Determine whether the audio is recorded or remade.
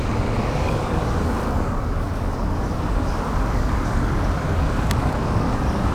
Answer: remade